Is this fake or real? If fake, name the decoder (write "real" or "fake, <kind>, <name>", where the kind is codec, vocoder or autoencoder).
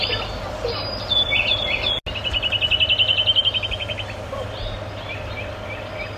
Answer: real